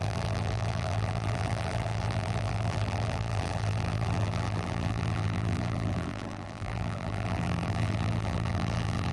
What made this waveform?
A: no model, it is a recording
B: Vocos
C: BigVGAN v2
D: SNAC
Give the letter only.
C